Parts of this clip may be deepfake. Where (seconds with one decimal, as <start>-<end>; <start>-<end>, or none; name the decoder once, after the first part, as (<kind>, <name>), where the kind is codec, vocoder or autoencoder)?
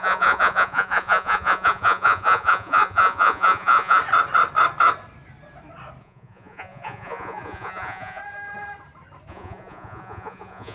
0.0-4.0 (vocoder, Vocos); 6.0-8.2; 9.3-10.7